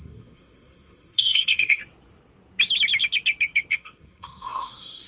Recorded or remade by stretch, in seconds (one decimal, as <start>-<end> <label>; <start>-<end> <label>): 0.0-1.8 remade; 1.8-3.7 recorded; 3.7-5.1 remade